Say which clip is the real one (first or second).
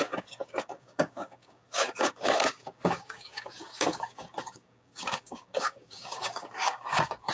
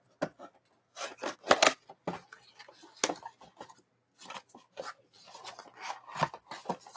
second